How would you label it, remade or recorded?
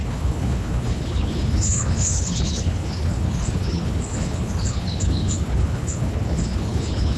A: remade